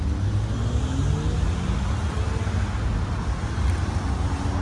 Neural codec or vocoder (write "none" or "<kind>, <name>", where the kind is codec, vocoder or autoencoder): none